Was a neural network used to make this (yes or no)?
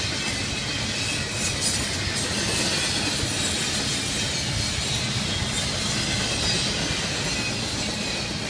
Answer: no